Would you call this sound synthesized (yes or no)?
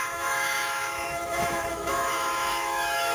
yes